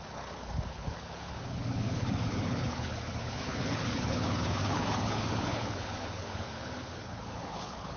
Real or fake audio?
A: fake